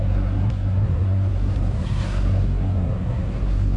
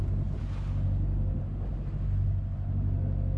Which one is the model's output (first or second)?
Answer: first